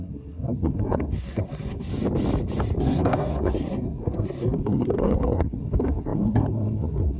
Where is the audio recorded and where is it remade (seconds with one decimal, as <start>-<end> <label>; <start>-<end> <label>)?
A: 0.0-1.9 remade; 1.9-2.8 recorded; 2.8-7.2 remade